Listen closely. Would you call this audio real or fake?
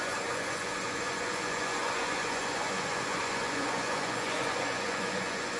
fake